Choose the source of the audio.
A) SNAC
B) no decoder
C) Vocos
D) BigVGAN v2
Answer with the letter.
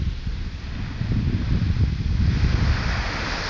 B